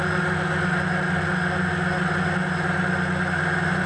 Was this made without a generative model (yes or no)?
yes